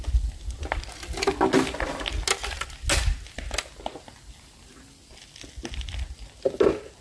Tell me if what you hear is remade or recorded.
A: recorded